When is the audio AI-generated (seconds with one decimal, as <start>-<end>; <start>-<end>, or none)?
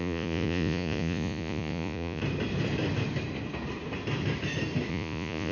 0.0-2.2; 4.9-5.5